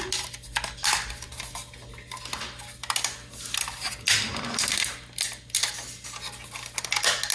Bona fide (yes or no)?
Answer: yes